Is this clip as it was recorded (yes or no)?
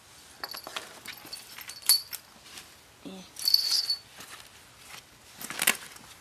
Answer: yes